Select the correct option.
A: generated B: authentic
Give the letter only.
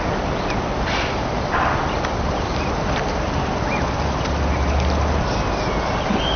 B